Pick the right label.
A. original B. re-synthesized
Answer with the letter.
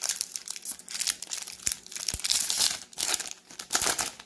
A